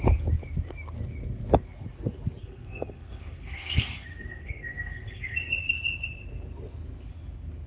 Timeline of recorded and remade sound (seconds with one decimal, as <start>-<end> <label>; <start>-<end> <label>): 0.0-2.4 recorded; 2.4-5.4 remade; 5.4-7.7 recorded